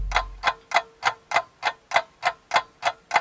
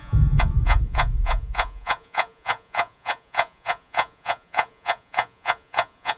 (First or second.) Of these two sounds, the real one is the first